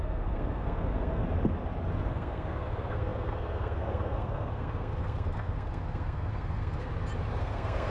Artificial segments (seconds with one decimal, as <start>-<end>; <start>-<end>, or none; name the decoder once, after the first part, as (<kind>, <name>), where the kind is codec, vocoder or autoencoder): 0.0-1.2 (codec, SNAC); 2.1-6.9; 7.4-7.9